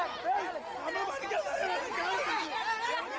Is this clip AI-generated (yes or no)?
no